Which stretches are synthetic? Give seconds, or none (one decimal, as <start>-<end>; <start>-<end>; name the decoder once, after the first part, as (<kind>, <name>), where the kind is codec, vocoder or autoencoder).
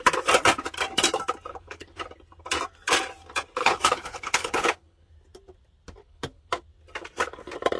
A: 1.5-2.0 (codec, HILCodec); 3.6-5.1; 6.0-6.5